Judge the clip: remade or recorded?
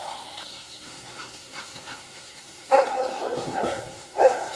remade